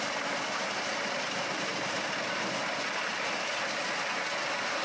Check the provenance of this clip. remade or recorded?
recorded